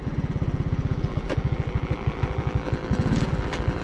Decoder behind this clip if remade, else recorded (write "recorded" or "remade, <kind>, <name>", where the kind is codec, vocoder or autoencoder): remade, vocoder, BigVGAN v2